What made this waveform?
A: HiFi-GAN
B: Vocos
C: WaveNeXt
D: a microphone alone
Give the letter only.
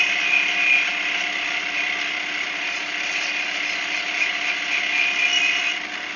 D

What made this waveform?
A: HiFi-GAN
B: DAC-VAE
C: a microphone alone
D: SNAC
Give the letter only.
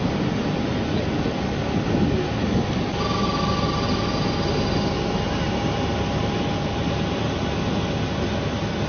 C